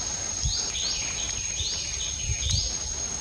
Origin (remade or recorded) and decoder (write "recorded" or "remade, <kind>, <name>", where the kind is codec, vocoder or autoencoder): recorded